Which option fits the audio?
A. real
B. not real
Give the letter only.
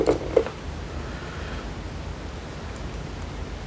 A